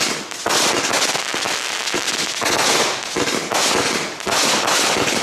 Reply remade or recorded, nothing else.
recorded